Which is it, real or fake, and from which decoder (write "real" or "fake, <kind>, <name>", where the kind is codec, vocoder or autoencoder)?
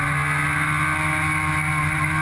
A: real